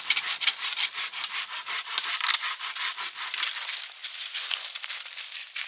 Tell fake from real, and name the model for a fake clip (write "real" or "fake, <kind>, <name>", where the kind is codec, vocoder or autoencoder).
fake, vocoder, BigVGAN v2